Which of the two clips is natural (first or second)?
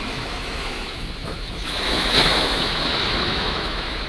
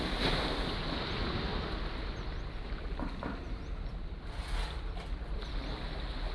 second